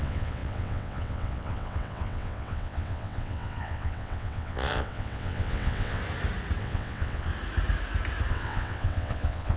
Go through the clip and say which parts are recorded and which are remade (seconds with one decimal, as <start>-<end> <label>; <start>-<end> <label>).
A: 0.0-6.0 remade; 6.0-6.6 recorded; 6.6-7.3 remade; 7.3-8.3 recorded; 8.3-9.6 remade